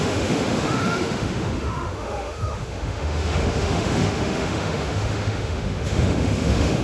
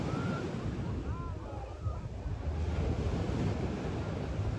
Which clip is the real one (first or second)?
second